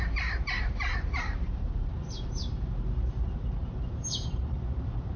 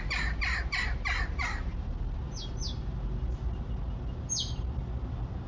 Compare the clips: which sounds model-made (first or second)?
first